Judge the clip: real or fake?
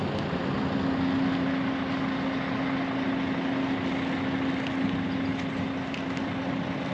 real